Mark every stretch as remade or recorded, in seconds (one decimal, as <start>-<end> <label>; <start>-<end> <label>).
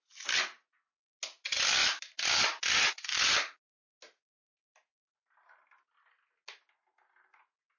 0.0-7.8 recorded